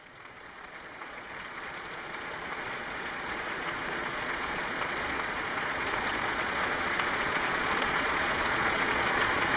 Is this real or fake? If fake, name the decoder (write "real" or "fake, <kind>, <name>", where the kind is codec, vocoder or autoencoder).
fake, vocoder, Vocos